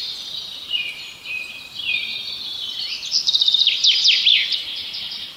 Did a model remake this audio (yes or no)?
no